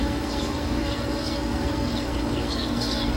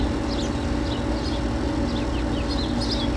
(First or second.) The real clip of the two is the second